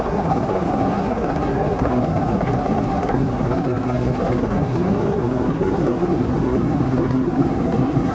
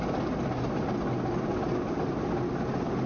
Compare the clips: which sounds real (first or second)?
second